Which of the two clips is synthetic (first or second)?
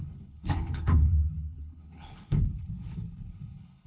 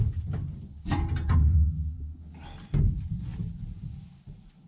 first